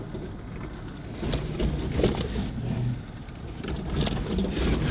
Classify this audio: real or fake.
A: real